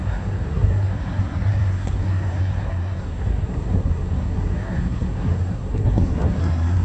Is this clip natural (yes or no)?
no